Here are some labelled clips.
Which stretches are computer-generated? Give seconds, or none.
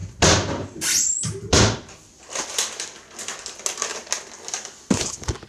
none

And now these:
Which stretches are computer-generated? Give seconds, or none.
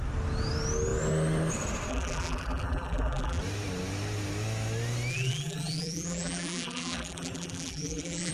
1.9-3.4 (vocoder, BigVGAN v2); 5.1-8.3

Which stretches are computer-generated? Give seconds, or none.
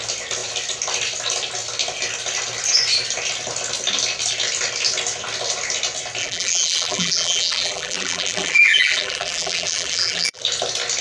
6.2-10.4 (vocoder, BigVGAN v2)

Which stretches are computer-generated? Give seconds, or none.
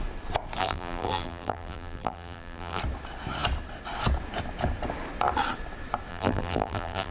0.6-2.8 (vocoder, BigVGAN v2); 6.1-7.1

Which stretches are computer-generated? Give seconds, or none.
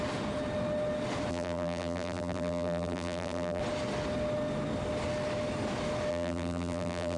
1.3-3.6 (vocoder, BigVGAN v2); 6.1-7.2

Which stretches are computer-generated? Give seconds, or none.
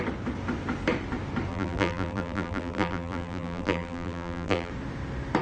1.5-4.7 (vocoder, BigVGAN v2)